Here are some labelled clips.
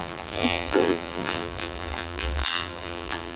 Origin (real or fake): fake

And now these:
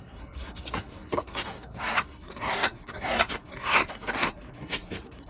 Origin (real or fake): fake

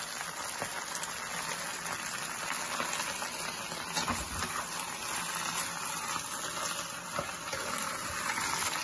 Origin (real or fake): real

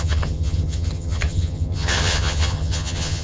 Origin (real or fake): fake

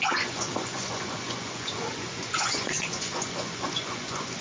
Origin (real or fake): fake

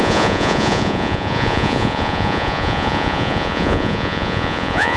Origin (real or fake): fake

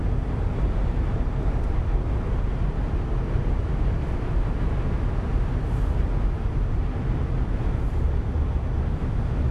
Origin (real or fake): real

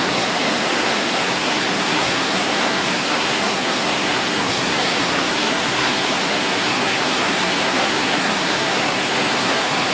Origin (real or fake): fake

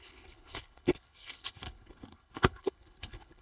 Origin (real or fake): fake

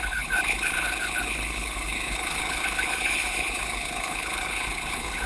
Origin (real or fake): fake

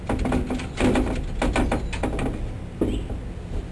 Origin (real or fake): real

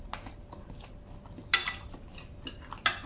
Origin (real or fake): real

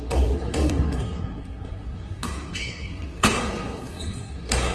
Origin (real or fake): fake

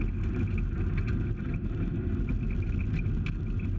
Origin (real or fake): real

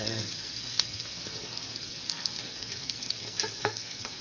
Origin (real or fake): fake